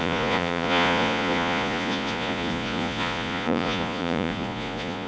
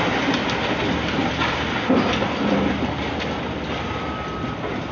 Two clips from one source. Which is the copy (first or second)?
first